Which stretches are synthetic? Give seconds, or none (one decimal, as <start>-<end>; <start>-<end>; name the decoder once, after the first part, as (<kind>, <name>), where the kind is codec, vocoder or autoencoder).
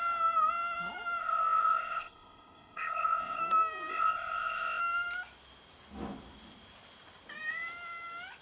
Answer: 1.2-3.4 (codec, ZipCodec); 3.9-4.8